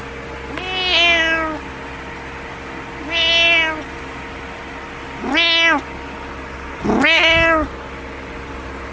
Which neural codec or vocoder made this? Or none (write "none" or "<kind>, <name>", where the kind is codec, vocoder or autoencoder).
none